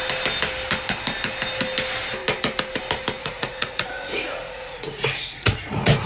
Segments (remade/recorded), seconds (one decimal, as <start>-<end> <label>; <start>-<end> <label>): 0.0-3.2 recorded; 3.2-6.1 remade